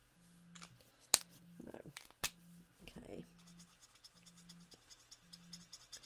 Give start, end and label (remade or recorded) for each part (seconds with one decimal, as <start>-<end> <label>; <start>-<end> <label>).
0.0-6.1 recorded